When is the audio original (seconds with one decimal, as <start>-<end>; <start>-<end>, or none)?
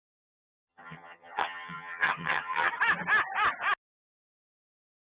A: 0.0-0.7; 2.7-5.0